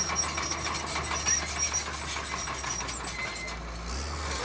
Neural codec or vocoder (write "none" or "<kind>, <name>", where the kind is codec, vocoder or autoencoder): none